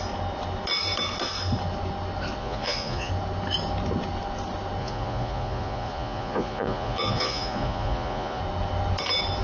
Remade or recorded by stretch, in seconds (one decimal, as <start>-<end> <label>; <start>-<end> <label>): 0.0-2.4 recorded; 2.4-3.1 remade; 3.1-4.8 recorded; 4.8-8.4 remade; 8.4-9.4 recorded